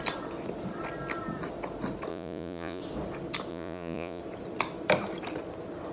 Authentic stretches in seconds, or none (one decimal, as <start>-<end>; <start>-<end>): 0.0-2.1; 2.8-3.5; 4.2-5.9